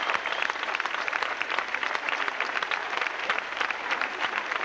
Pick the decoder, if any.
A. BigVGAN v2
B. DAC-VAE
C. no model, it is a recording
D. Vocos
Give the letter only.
A